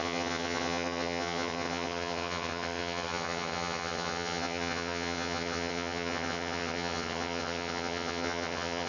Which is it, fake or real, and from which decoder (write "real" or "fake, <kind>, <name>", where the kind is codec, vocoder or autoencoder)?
fake, vocoder, HiFi-GAN